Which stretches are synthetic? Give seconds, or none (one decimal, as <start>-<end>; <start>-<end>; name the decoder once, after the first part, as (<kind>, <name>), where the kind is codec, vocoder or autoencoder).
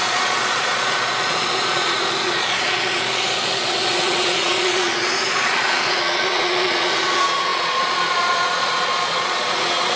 0.0-10.0 (vocoder, Vocos)